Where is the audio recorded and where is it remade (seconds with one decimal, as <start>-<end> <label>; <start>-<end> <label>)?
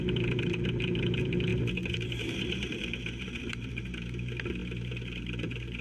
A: 0.0-5.8 remade